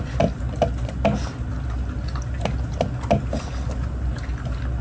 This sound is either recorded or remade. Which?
recorded